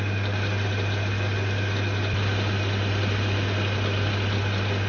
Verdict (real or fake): real